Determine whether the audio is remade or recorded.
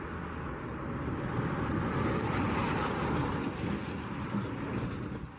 recorded